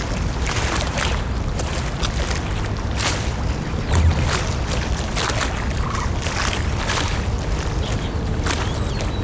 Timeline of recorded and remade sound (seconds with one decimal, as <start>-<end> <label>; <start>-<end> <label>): 0.0-9.2 recorded